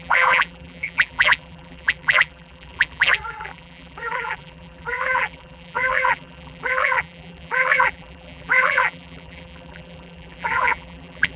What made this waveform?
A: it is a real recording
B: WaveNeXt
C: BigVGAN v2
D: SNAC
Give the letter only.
C